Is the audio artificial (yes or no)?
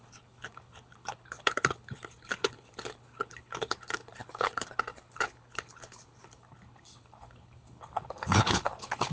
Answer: yes